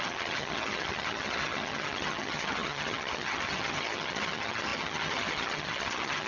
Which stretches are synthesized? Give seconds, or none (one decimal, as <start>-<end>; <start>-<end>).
0.0-6.3